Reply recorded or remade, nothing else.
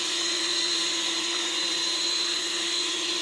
remade